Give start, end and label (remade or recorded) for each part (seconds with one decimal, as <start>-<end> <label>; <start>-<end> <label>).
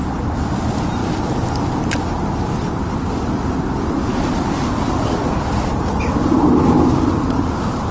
0.0-7.9 recorded